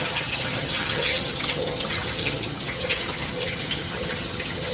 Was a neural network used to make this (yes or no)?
yes